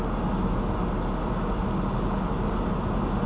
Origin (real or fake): real